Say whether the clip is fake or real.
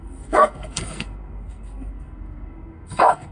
fake